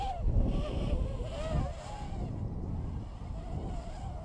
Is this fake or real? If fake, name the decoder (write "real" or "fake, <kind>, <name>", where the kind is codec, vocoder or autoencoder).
real